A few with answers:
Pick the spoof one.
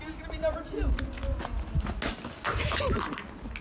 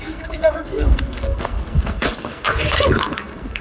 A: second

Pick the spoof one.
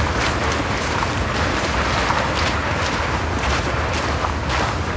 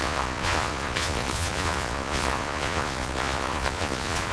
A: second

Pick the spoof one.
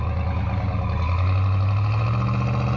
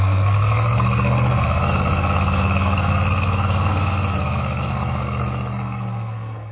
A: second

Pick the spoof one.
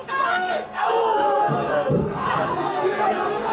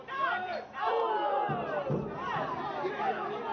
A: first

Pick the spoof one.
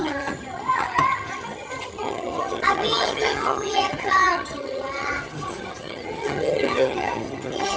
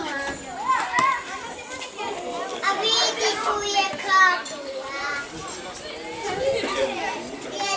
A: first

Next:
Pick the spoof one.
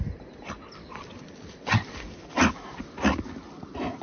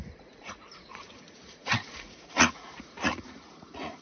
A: second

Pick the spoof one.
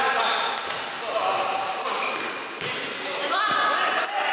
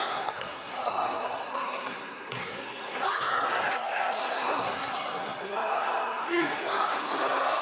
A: second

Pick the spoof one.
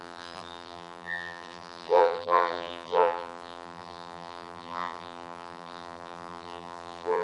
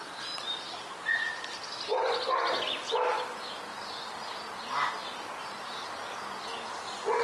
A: first